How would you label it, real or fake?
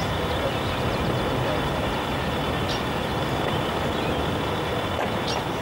real